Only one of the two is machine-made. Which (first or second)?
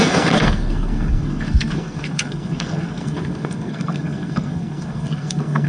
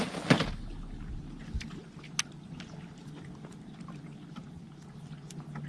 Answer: first